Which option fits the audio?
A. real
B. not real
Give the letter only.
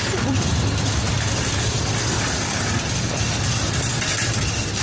A